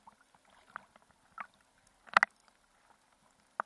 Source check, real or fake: real